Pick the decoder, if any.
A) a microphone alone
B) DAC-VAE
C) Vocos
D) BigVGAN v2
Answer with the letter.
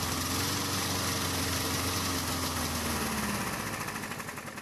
A